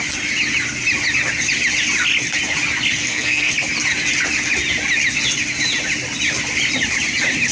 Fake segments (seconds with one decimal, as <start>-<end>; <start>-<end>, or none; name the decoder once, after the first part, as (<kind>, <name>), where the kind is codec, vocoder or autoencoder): 3.0-3.5 (codec, SNAC)